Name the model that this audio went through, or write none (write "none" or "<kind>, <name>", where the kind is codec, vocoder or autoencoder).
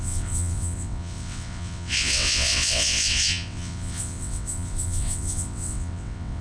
vocoder, WaveNeXt